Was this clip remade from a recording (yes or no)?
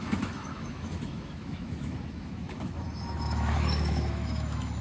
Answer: yes